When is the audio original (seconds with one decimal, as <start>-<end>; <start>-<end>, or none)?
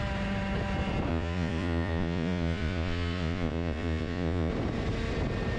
0.0-1.1; 4.5-5.6